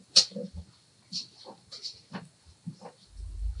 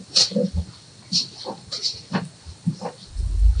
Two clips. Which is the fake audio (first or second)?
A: second